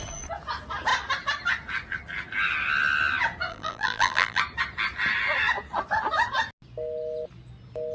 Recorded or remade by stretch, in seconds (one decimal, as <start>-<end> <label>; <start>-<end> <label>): 0.0-3.5 recorded; 3.5-4.4 remade; 4.4-7.9 recorded